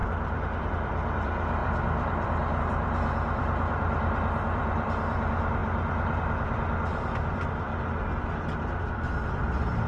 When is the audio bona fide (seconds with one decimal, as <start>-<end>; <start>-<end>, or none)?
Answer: 7.7-8.8